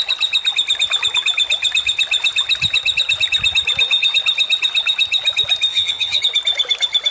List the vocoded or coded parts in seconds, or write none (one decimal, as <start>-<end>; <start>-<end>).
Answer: 5.7-6.2